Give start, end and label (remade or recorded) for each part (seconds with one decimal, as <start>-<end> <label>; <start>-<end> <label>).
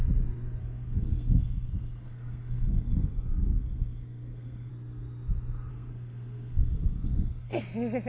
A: 0.0-0.6 recorded; 0.6-4.7 remade; 4.7-5.7 recorded; 5.7-7.6 remade; 7.6-8.1 recorded